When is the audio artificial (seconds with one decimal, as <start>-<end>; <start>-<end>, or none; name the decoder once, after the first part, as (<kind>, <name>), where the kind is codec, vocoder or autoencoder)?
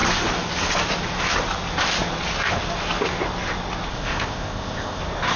3.9-5.0 (codec, ZipCodec)